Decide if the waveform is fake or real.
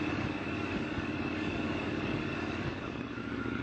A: fake